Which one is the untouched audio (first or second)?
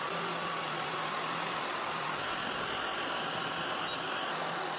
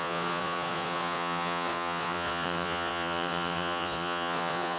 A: first